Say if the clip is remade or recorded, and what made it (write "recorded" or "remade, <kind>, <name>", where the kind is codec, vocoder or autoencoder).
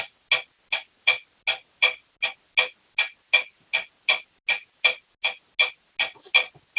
recorded